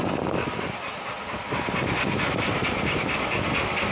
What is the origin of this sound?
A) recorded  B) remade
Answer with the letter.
B